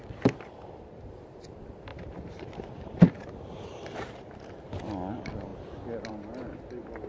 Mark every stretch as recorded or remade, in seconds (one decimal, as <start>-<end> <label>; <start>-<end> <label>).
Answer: 0.0-1.9 recorded; 1.9-4.1 remade; 4.1-7.1 recorded